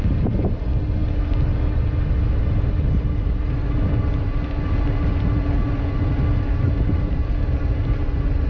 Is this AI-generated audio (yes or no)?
no